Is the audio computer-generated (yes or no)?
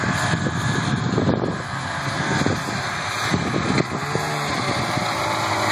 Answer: no